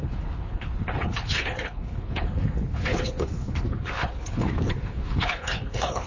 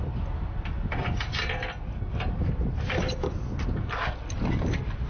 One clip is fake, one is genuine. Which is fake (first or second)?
first